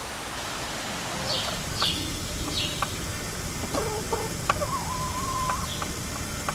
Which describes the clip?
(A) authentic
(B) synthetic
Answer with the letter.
A